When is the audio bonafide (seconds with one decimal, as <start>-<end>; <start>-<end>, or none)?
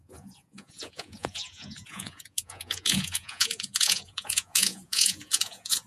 none